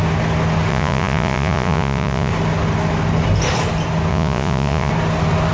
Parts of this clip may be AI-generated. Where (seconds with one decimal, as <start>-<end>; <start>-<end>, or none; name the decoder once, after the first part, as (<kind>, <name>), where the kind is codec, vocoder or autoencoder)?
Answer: 0.7-2.3 (vocoder, Vocos); 4.1-4.9